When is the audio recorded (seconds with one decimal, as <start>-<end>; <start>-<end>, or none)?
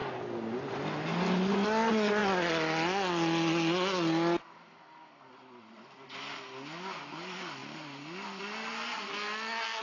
0.0-9.8